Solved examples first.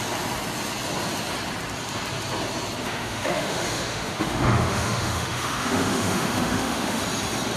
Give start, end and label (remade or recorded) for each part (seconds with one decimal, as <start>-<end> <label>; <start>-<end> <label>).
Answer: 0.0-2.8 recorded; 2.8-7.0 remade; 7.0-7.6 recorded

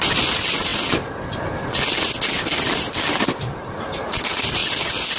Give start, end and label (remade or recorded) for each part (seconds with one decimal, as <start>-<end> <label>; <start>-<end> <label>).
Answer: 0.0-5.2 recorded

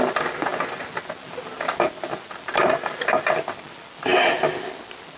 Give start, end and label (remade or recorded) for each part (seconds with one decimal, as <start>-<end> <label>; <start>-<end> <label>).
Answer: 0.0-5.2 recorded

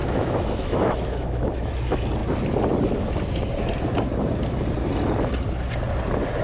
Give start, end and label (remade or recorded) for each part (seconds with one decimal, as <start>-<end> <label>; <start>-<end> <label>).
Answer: 0.0-1.7 remade; 1.7-6.4 recorded

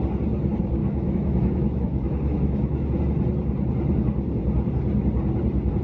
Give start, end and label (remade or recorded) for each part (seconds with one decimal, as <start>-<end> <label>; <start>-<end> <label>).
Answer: 0.0-0.8 recorded; 0.8-3.0 remade; 3.0-5.8 recorded

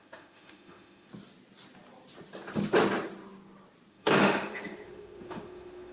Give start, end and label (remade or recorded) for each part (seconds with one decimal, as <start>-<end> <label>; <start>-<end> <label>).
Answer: 0.0-1.1 remade; 1.1-3.9 recorded; 3.9-5.9 remade

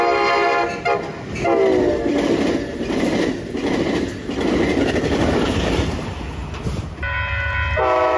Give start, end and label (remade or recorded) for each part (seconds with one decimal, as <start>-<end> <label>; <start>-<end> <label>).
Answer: 0.0-8.2 recorded